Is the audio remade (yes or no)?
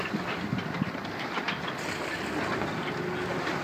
no